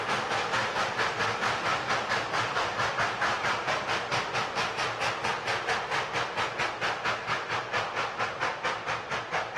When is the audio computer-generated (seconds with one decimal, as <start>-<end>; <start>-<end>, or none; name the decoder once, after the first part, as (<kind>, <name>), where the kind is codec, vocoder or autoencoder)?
none